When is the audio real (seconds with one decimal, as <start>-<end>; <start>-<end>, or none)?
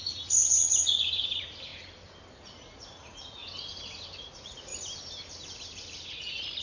1.7-2.3; 3.4-4.2; 4.7-6.1